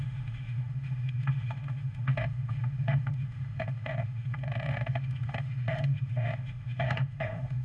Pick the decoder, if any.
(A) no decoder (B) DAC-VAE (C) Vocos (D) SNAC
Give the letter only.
B